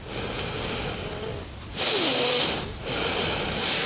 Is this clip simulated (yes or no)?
no